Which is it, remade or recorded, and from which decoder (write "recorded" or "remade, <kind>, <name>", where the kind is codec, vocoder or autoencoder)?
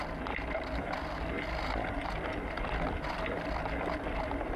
recorded